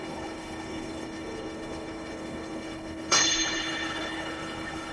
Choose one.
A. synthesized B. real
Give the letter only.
A